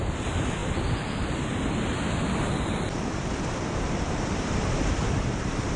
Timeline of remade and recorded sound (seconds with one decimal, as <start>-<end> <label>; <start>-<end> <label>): 0.0-5.8 remade